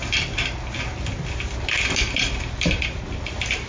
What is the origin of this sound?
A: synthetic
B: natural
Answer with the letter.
B